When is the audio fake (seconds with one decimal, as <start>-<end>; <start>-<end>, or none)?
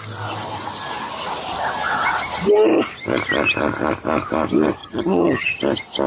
4.8-5.6